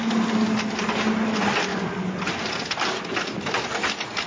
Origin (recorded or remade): recorded